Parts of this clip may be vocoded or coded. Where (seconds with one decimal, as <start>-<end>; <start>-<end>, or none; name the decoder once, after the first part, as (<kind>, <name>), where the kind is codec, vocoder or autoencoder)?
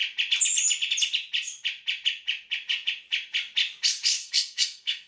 4.2-5.1 (codec, SNAC)